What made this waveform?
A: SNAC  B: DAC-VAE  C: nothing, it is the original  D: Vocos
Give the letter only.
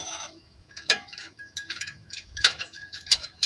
B